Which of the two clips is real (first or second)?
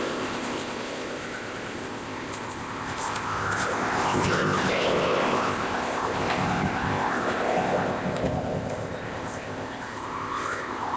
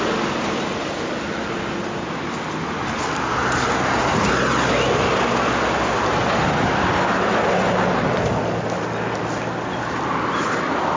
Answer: second